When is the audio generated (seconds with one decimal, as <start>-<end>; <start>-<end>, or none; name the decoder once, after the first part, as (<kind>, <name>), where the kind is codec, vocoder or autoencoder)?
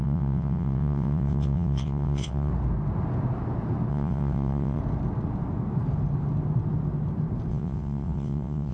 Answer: 0.0-2.5 (vocoder, WaveNeXt); 3.9-4.8; 7.5-8.7